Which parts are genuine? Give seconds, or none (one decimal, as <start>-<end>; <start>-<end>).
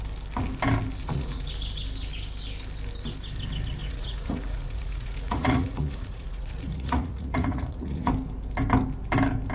0.0-1.0; 1.5-3.8; 8.1-9.5